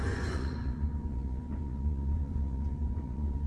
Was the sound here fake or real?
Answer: fake